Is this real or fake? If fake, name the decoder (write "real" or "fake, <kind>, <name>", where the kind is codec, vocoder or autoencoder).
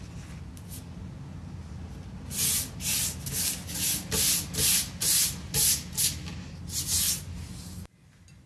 real